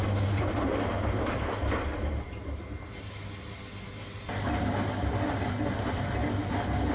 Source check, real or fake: real